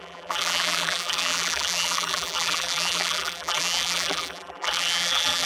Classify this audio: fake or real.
fake